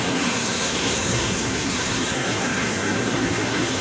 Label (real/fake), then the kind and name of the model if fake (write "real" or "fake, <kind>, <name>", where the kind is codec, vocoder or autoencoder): fake, codec, SNAC